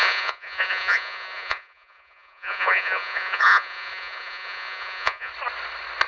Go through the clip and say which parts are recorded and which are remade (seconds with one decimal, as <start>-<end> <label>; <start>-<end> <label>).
0.0-5.3 remade; 5.3-6.1 recorded